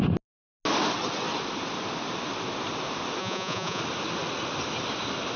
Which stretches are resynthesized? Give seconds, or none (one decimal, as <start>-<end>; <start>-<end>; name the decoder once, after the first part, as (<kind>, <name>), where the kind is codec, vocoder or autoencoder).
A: 3.2-3.8 (vocoder, Vocos)